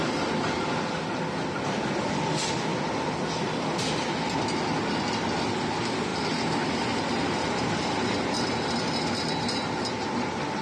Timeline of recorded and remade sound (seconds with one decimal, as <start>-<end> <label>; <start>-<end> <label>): 0.0-10.6 recorded

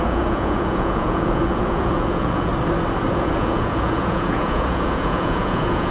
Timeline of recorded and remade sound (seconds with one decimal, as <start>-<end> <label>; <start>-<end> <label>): 0.0-2.5 remade; 2.5-3.1 recorded; 3.1-5.9 remade

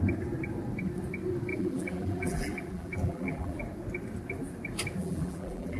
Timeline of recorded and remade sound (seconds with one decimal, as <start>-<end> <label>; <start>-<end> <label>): 0.0-1.5 recorded; 1.5-3.6 remade; 3.6-5.0 recorded; 5.0-5.8 remade

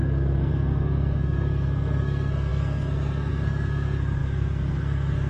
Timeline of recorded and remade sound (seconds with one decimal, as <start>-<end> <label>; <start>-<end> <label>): 0.0-5.3 remade

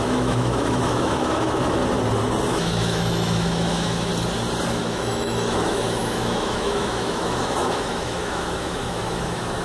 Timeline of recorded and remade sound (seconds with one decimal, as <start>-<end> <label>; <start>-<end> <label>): 0.0-1.8 remade; 1.8-2.5 recorded; 2.5-4.1 remade; 4.1-4.8 recorded; 4.8-9.6 remade